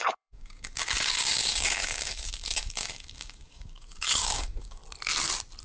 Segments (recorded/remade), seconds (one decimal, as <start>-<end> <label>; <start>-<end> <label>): 0.0-4.8 remade; 4.8-5.6 recorded

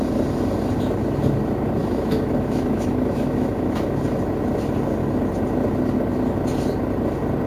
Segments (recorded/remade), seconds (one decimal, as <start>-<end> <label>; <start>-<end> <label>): 0.0-1.8 recorded; 1.8-3.7 remade; 3.7-7.5 recorded

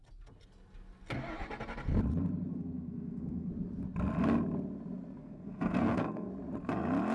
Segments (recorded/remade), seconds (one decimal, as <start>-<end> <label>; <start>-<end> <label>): 0.0-2.5 recorded; 2.5-3.5 remade; 3.5-5.2 recorded; 5.2-6.3 remade; 6.3-7.1 recorded